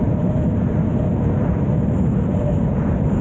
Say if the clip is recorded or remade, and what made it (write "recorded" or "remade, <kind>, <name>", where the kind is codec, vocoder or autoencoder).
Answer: remade, vocoder, BigVGAN v2